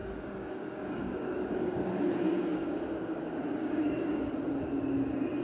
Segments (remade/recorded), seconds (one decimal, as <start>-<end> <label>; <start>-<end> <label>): 0.0-3.2 remade; 3.2-3.6 recorded; 3.6-4.3 remade; 4.3-5.4 recorded